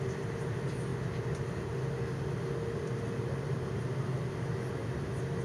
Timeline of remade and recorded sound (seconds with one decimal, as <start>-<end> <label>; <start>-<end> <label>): 0.0-5.4 recorded